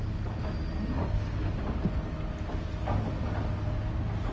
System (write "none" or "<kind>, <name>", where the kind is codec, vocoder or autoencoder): none